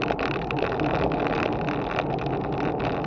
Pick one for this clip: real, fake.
real